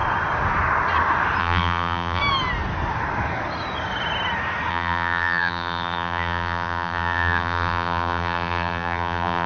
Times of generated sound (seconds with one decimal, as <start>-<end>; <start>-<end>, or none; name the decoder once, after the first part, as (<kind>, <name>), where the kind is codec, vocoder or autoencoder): 1.4-2.2 (vocoder, BigVGAN v2); 4.7-9.5